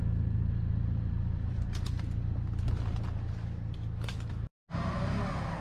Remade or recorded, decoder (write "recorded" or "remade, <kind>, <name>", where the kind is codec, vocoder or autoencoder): recorded